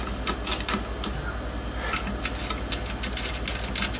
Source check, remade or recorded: recorded